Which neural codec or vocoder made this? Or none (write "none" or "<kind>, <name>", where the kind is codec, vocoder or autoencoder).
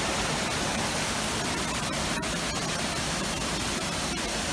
none